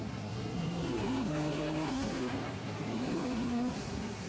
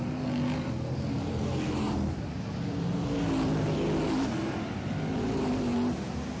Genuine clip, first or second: second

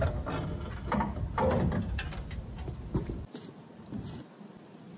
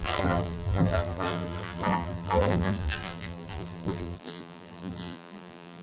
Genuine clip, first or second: first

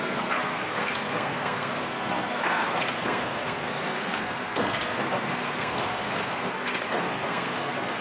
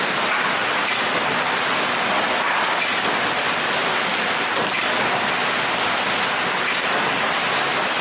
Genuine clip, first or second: second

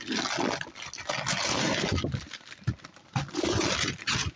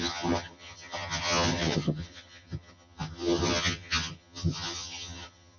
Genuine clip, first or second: first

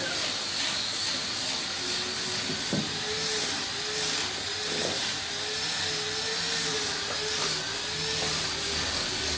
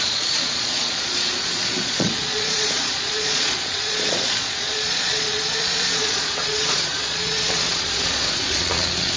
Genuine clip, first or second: first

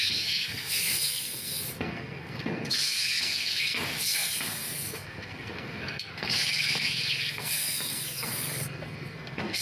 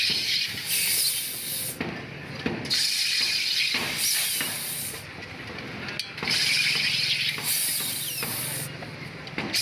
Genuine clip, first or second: second